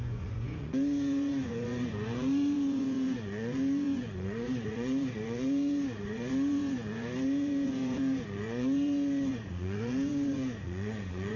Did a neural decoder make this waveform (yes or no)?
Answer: yes